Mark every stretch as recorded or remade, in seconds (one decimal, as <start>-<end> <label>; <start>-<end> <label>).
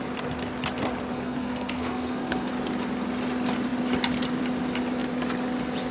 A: 0.0-1.1 recorded; 1.1-2.5 remade; 2.5-5.9 recorded